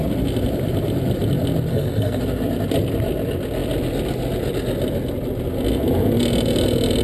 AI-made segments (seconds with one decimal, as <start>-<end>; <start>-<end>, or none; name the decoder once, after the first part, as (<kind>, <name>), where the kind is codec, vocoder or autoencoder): 1.7-2.2 (codec, SNAC)